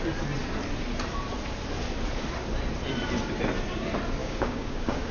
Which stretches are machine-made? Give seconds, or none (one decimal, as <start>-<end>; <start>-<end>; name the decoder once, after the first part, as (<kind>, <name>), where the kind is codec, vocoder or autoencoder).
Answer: 4.2-5.1 (codec, DAC)